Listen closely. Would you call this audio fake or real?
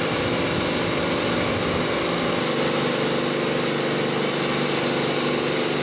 real